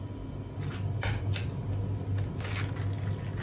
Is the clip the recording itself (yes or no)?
yes